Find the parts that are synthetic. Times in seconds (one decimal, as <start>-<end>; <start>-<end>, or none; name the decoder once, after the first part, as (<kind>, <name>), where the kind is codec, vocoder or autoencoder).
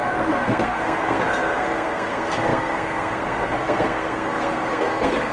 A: 0.0-5.3 (codec, SNAC)